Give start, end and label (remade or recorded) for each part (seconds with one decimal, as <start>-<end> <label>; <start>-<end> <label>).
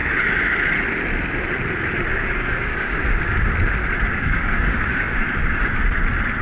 0.0-0.6 remade; 0.6-2.1 recorded; 2.1-3.5 remade; 3.5-4.1 recorded; 4.1-5.8 remade; 5.8-6.4 recorded